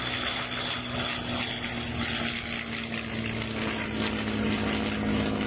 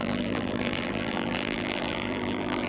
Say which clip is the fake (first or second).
second